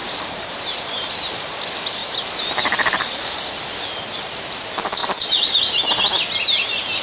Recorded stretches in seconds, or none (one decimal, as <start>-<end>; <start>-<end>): 1.5-2.0; 3.5-5.0; 5.6-7.0